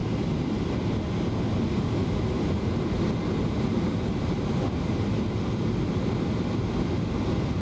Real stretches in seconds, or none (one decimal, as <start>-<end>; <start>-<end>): 0.0-7.6